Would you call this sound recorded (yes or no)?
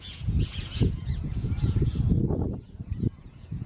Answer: no